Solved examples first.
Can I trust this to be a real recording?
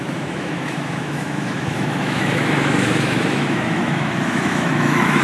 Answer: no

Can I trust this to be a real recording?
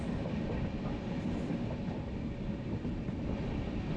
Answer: yes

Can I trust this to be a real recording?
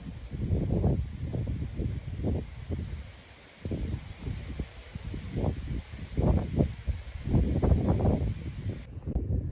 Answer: yes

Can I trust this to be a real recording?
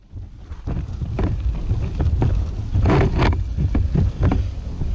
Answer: yes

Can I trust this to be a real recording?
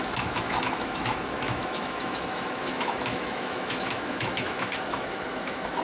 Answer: no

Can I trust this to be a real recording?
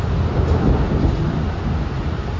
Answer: yes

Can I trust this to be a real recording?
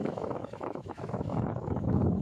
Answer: no